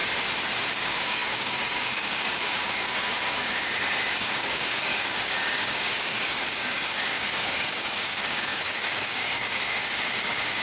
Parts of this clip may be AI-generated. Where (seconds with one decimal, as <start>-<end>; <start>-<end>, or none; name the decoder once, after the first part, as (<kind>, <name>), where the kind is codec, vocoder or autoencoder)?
0.7-10.6 (codec, DAC)